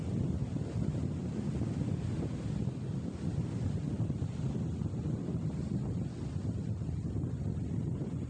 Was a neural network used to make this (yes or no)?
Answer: no